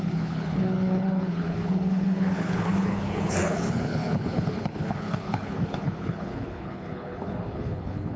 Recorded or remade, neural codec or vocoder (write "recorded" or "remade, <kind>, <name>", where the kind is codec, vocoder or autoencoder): remade, codec, HILCodec